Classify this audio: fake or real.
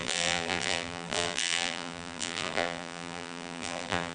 fake